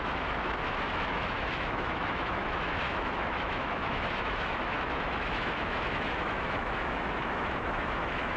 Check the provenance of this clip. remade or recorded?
remade